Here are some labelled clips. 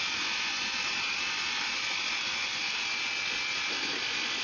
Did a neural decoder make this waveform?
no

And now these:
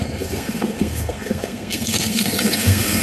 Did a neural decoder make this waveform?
yes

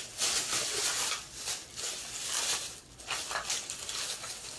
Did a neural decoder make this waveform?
no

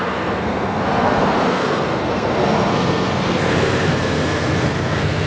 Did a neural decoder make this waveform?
yes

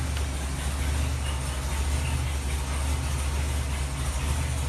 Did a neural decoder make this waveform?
no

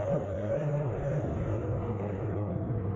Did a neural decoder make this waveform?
yes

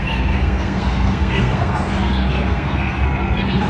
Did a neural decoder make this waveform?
yes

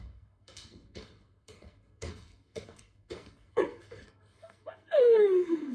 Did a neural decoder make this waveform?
yes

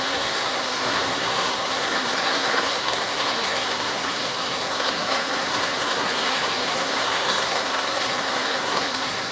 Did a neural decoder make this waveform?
yes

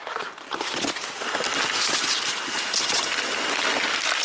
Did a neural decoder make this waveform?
no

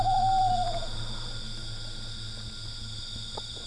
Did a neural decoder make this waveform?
no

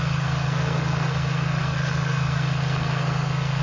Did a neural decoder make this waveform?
yes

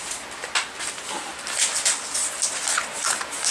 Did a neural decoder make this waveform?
no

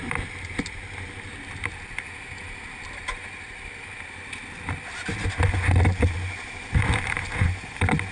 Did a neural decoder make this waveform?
no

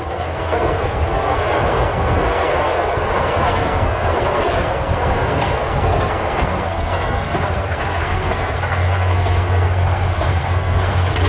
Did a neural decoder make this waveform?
yes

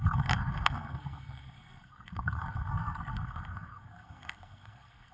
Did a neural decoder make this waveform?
yes